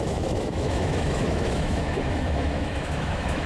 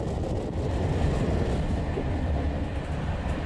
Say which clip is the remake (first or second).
first